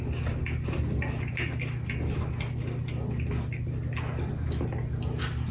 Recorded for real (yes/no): yes